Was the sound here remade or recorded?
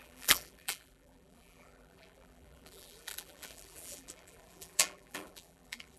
remade